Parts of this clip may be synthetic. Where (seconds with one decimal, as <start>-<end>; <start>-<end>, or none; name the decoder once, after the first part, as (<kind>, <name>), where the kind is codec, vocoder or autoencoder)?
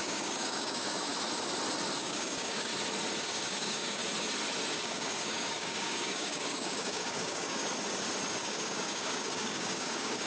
0.0-1.1 (codec, DAC); 2.0-2.7; 3.2-4.0; 4.7-7.6; 8.3-10.3